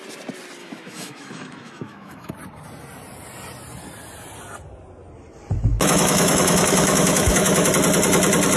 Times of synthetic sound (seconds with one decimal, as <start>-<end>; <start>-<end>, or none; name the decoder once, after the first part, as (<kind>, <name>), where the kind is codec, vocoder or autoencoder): 0.6-2.3 (autoencoder, DAC-VAE); 5.7-7.7